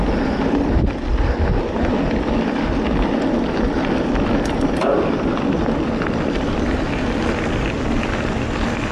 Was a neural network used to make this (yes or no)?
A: no